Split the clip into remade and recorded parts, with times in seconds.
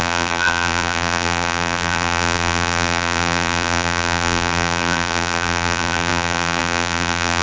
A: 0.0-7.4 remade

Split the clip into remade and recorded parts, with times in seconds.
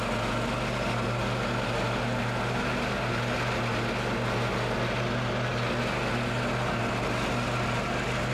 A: 0.0-8.3 recorded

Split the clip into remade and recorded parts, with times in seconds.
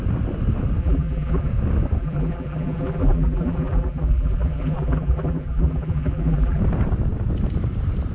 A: 0.0-0.8 recorded; 0.8-1.5 remade; 1.5-2.0 recorded; 2.0-6.6 remade; 6.6-8.1 recorded